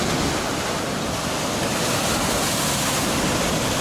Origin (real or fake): real